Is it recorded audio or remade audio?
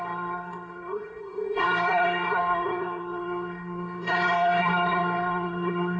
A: remade